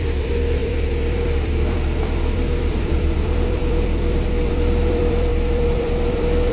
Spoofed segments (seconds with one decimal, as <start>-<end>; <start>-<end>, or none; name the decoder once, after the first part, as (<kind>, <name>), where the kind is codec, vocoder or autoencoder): 0.0-6.5 (vocoder, BigVGAN v2)